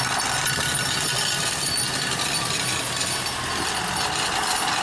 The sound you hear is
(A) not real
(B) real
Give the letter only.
B